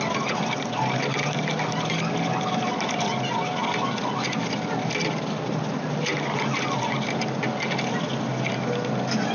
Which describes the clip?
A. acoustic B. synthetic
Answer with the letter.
A